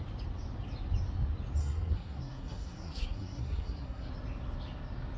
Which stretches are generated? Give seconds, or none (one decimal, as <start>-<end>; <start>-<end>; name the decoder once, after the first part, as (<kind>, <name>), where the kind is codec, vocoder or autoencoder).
1.6-4.1 (codec, SNAC)